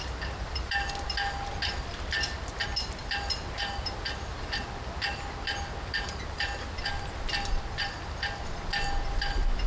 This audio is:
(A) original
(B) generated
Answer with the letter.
A